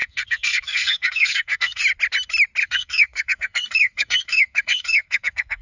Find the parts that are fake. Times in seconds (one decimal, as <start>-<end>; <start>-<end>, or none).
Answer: 0.0-1.8; 2.6-5.6